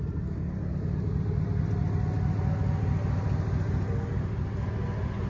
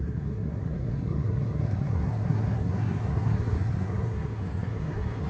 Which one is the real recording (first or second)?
first